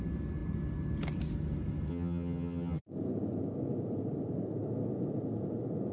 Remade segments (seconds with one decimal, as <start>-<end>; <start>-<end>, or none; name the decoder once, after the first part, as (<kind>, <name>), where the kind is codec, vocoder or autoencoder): 1.9-2.8 (vocoder, HiFi-GAN)